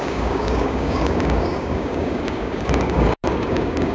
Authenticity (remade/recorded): remade